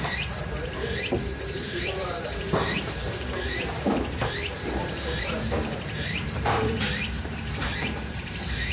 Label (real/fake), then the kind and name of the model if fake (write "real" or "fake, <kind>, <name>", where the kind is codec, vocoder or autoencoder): fake, vocoder, BigVGAN v2